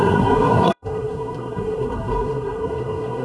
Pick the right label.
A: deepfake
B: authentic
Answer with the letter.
A